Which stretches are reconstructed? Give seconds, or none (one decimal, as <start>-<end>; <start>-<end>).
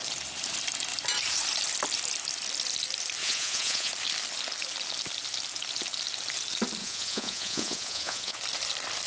3.2-3.9; 6.8-8.4